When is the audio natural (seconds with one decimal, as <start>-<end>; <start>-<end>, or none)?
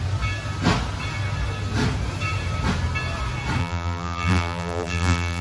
0.0-3.6